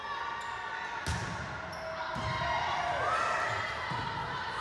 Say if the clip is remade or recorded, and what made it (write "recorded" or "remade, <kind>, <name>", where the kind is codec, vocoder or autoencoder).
recorded